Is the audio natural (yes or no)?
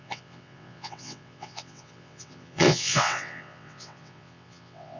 no